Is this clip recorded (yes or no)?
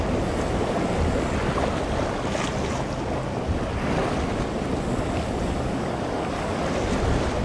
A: yes